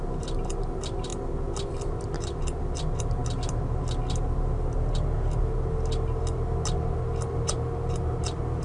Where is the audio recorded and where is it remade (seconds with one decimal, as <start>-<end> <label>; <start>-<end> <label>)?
0.0-8.6 recorded